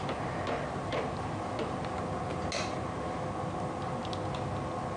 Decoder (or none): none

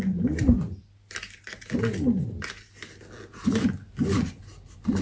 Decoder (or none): none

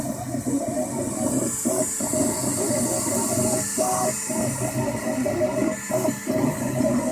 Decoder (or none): none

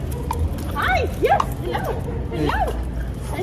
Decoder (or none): none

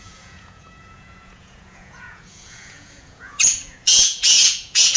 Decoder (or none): vocoder, Vocos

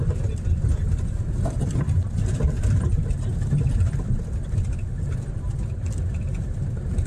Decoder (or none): none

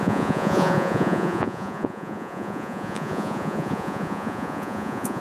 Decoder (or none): vocoder, Vocos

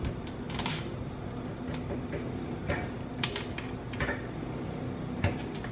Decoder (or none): none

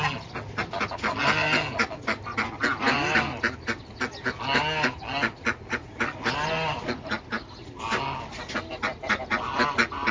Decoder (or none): none